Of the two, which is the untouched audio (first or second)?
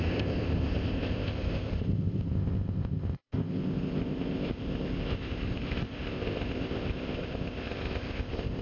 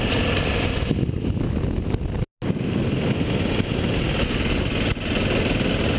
second